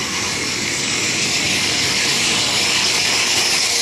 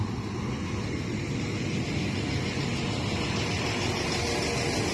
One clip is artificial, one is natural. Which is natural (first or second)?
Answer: second